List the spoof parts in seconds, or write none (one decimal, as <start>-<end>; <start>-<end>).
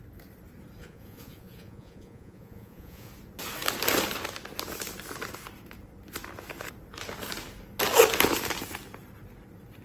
0.8-3.1